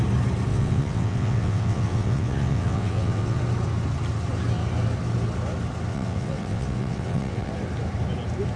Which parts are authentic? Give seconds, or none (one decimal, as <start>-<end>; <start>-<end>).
0.0-0.5; 3.4-5.9; 7.5-8.6